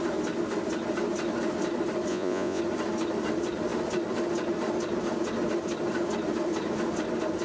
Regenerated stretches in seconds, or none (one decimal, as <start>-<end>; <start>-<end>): 2.1-2.6